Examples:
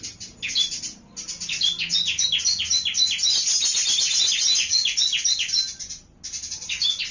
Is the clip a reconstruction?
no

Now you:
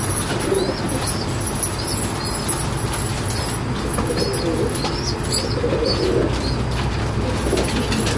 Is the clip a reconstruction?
no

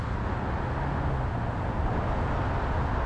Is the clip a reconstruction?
no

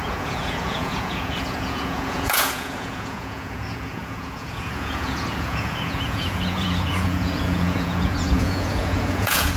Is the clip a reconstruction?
yes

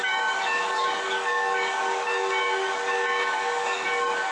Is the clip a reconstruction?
yes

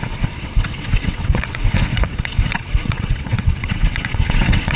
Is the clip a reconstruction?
yes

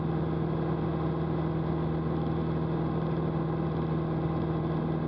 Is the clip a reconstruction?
no